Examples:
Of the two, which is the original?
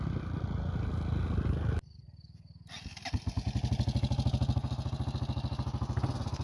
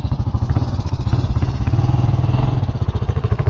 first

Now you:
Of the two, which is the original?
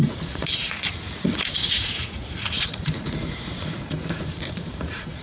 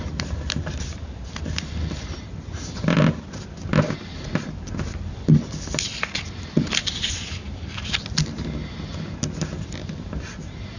second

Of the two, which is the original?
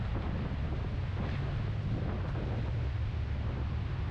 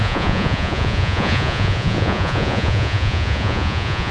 first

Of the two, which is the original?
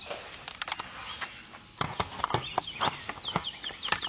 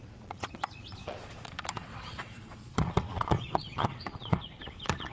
first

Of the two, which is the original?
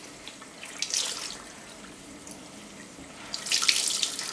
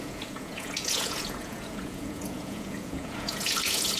first